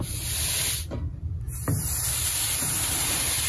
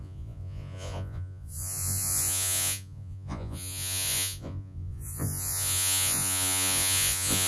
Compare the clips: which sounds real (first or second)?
first